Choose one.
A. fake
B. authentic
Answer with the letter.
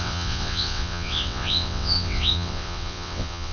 A